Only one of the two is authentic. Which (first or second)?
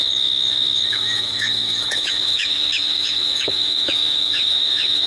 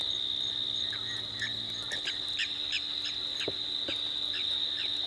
second